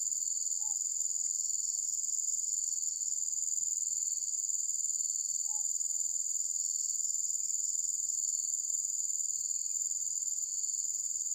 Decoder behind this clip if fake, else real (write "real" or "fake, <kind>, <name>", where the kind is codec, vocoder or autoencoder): real